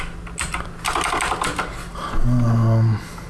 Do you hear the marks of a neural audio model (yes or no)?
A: no